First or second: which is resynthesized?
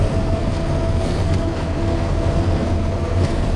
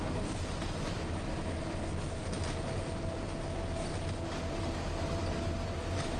first